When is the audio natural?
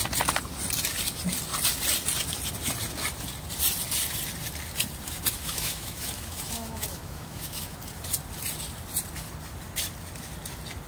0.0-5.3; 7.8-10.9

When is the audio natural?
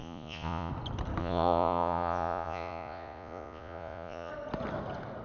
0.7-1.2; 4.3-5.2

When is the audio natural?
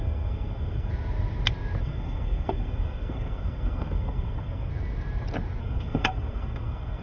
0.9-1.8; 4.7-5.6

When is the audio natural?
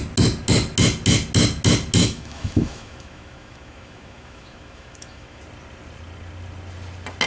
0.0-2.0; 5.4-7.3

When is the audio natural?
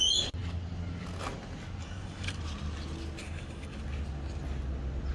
0.0-1.8; 2.4-3.2; 3.8-5.1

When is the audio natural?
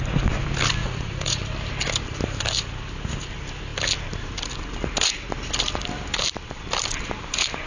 0.0-0.8; 1.4-7.7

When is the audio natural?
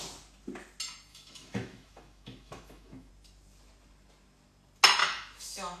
0.0-1.1; 3.1-5.0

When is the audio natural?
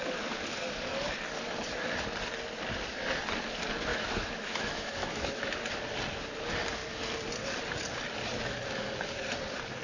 0.0-3.9; 5.4-9.8